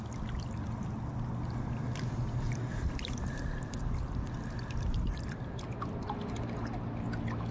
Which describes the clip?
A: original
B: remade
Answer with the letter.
A